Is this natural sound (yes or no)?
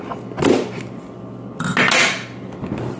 yes